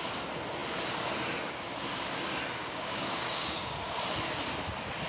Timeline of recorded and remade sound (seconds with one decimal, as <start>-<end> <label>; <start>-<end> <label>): 0.0-2.6 recorded; 2.6-4.0 remade; 4.0-5.1 recorded